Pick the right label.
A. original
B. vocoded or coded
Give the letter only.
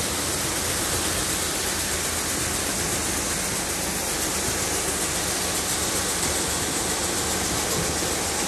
A